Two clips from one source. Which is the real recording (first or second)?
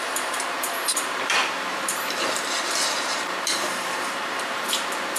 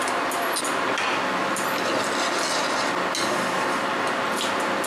second